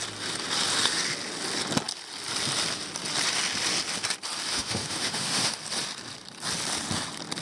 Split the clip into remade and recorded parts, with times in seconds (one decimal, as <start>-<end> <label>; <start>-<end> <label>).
0.0-4.5 recorded; 4.5-5.5 remade; 5.5-7.4 recorded